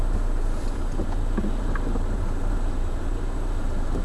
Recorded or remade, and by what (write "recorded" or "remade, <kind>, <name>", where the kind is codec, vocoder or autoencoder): remade, vocoder, BigVGAN v2